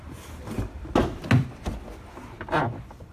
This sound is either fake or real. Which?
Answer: real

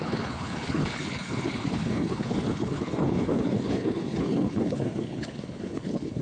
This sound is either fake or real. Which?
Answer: fake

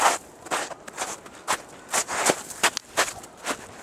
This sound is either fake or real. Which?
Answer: real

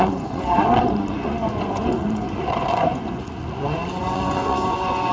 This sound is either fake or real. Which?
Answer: fake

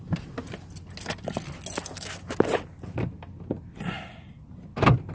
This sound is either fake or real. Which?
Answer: real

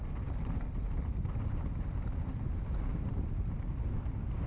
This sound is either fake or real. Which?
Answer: real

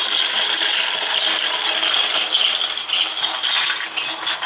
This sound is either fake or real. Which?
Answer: real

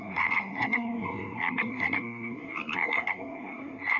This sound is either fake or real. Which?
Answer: fake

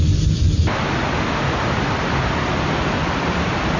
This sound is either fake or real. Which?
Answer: fake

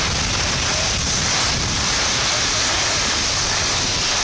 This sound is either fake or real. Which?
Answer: real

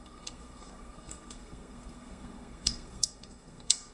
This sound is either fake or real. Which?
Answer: fake